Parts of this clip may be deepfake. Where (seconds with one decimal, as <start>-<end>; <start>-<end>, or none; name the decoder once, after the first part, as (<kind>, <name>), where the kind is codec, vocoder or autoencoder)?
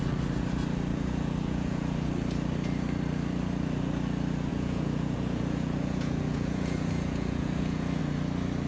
0.9-2.1 (vocoder, Vocos); 4.5-8.0